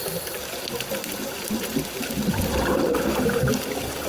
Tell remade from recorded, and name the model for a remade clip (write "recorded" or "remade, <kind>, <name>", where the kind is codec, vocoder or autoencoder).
recorded